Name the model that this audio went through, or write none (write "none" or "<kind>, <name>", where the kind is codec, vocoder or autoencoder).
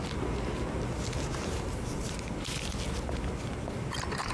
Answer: none